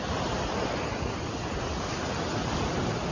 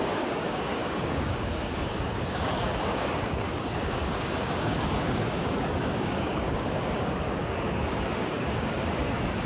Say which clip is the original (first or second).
first